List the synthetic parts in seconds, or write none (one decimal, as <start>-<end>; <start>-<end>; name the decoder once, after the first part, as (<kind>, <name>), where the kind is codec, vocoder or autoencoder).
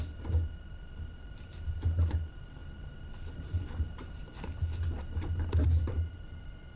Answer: 0.0-2.6 (vocoder, BigVGAN v2); 5.6-6.8